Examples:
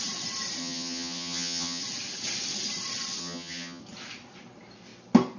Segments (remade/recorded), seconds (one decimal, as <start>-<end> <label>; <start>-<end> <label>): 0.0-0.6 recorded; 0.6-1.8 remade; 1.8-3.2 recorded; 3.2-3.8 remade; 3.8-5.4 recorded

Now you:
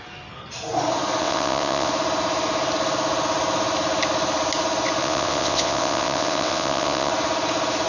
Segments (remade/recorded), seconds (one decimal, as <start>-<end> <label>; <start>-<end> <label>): 0.0-1.2 recorded; 1.2-1.9 remade; 1.9-5.0 recorded; 5.0-7.1 remade; 7.1-7.9 recorded

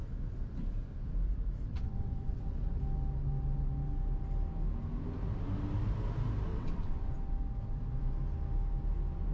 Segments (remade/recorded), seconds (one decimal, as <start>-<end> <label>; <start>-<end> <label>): 0.0-1.7 recorded; 1.7-2.8 remade; 2.8-6.5 recorded; 6.5-7.1 remade; 7.1-9.3 recorded